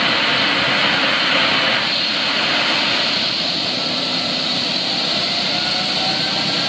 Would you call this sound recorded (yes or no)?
yes